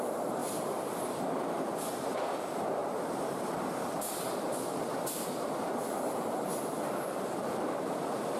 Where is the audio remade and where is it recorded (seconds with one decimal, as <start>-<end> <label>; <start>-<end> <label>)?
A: 0.0-0.4 remade; 0.4-2.4 recorded; 2.4-8.4 remade